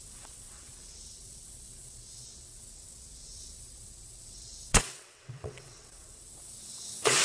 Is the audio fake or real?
fake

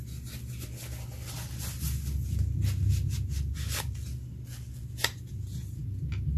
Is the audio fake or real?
real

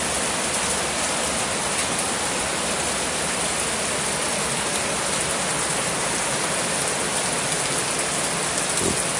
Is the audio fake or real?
real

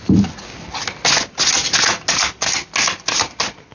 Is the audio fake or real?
real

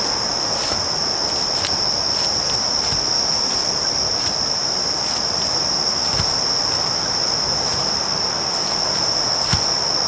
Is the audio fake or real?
real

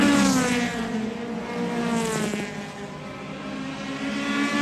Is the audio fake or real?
real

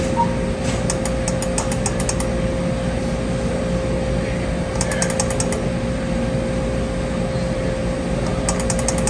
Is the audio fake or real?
real